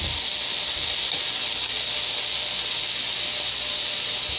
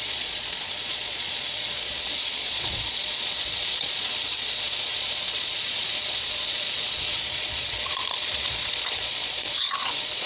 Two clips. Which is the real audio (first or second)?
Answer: first